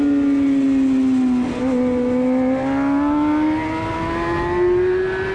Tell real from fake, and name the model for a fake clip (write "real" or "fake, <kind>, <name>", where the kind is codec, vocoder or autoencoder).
real